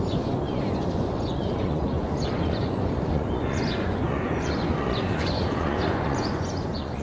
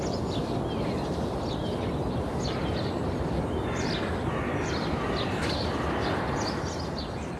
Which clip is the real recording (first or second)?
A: second